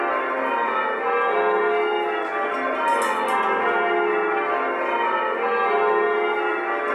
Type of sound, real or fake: real